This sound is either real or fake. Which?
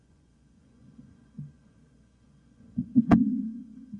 fake